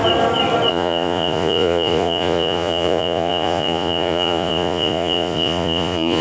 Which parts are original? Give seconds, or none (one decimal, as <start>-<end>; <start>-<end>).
0.0-0.7